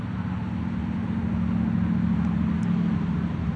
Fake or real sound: real